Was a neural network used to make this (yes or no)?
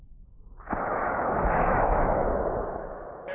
yes